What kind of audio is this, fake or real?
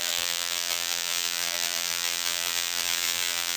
fake